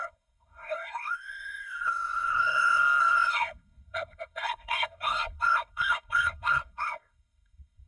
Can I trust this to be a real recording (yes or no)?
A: no